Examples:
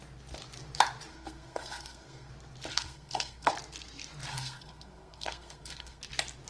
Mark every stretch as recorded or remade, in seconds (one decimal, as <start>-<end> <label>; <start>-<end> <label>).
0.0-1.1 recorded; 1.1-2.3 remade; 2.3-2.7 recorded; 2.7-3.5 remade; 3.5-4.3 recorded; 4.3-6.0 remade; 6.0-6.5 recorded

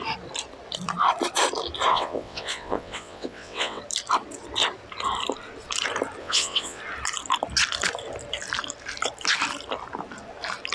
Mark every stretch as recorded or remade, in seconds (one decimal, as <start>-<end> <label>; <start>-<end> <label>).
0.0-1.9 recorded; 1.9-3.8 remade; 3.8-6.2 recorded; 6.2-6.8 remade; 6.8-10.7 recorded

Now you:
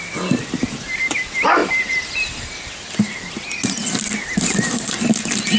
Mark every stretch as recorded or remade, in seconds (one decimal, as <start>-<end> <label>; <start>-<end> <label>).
0.0-1.6 recorded; 1.6-2.5 remade; 2.5-5.6 recorded

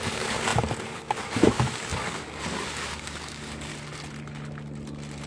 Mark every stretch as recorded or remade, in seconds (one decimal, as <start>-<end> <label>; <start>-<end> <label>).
0.0-3.7 remade; 3.7-5.3 recorded